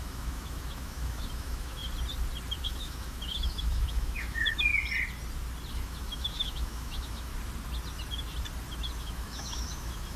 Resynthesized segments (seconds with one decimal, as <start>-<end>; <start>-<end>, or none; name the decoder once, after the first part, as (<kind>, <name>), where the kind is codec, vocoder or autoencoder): 0.0-1.8 (autoencoder, DAC-VAE); 2.6-4.7; 5.7-7.3; 9.0-10.2